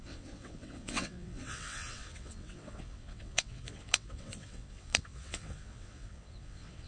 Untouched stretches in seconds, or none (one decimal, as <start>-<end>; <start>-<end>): none